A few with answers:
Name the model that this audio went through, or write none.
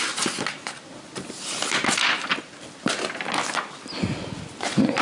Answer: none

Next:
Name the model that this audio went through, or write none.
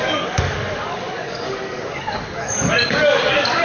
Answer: codec, DAC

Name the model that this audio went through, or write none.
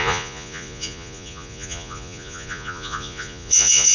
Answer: vocoder, Vocos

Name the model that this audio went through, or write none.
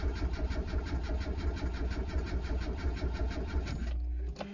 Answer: none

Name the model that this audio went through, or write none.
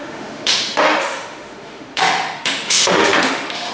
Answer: autoencoder, DAC-VAE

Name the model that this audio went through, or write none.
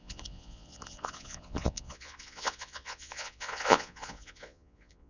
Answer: vocoder, Vocos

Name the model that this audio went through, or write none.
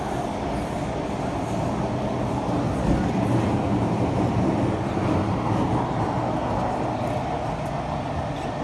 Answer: none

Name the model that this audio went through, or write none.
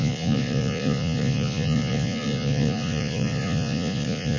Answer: vocoder, Vocos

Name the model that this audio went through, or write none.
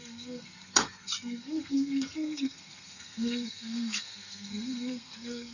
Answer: codec, SNAC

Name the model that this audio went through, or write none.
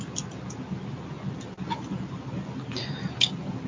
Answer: none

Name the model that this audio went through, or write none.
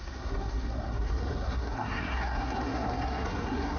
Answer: codec, SNAC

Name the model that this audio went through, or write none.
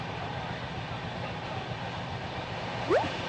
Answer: none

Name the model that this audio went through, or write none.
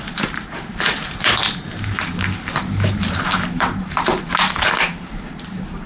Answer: vocoder, BigVGAN v2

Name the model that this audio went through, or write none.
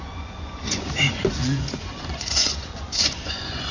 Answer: vocoder, Vocos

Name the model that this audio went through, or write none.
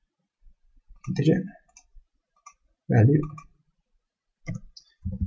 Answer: none